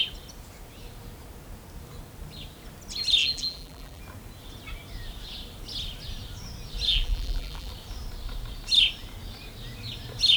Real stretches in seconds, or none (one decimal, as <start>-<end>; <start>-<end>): 0.0-3.2; 4.0-6.9; 7.7-10.4